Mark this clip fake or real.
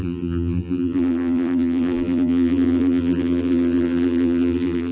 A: fake